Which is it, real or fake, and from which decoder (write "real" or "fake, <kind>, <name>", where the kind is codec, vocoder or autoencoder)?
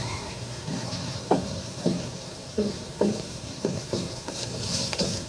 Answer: fake, codec, SNAC